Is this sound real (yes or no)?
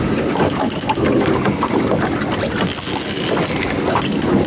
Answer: yes